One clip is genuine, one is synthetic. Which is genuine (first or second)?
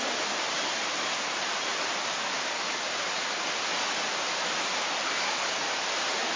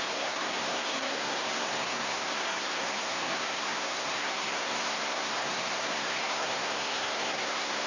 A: first